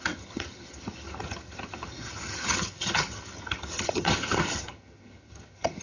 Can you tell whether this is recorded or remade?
remade